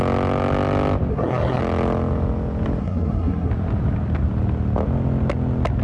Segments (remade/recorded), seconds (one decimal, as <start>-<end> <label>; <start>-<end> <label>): 0.0-1.1 recorded; 1.1-1.6 remade; 1.6-2.8 recorded; 2.8-3.5 remade; 3.5-5.8 recorded